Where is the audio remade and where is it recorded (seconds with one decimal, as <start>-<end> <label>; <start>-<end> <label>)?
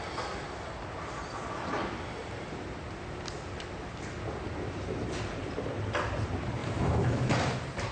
0.0-6.6 recorded; 6.6-7.3 remade; 7.3-7.9 recorded